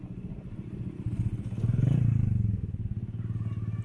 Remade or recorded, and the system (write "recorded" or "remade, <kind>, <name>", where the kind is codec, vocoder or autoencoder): recorded